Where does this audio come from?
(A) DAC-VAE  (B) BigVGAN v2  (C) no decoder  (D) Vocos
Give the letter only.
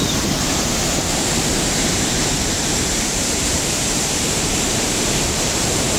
B